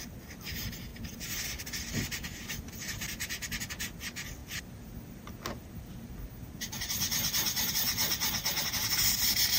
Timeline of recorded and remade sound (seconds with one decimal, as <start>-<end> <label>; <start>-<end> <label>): 0.0-9.6 recorded